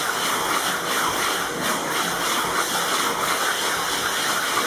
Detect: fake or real real